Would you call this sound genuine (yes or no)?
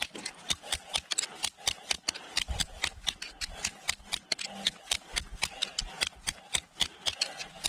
yes